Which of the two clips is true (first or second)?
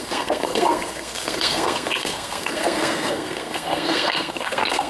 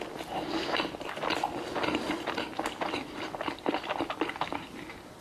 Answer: second